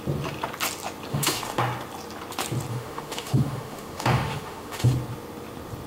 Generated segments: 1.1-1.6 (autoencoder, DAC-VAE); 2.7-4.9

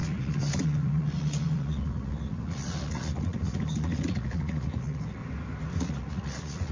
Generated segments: 0.0-5.2 (vocoder, Vocos); 5.8-6.7

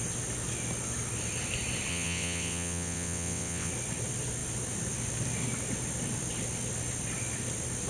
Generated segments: 1.9-3.7 (vocoder, WaveNeXt)

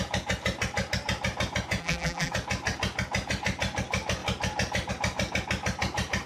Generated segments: 1.8-2.3 (vocoder, BigVGAN v2)

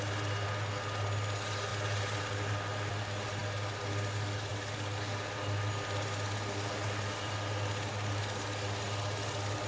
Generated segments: none

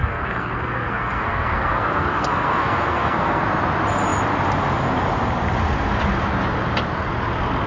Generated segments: 0.0-3.4 (codec, SNAC)

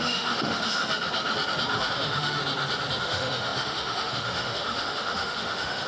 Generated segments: 0.0-0.8 (autoencoder, DAC-VAE); 1.9-2.4; 3.0-5.9

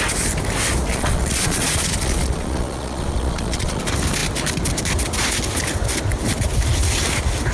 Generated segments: 0.9-3.8 (vocoder, Vocos)